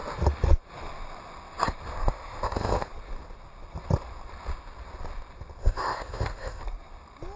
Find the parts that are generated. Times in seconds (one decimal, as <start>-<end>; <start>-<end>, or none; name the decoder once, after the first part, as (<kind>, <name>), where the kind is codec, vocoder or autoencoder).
1.9-2.9 (codec, ZipCodec); 5.6-6.6